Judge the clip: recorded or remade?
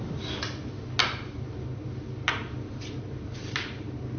recorded